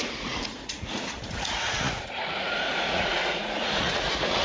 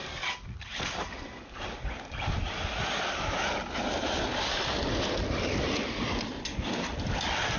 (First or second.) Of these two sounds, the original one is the second